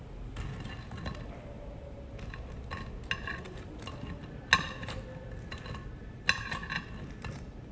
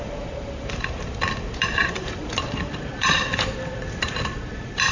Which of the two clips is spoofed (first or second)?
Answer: second